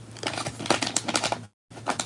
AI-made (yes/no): no